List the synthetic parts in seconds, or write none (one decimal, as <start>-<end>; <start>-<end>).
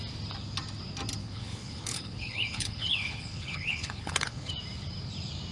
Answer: 1.2-4.5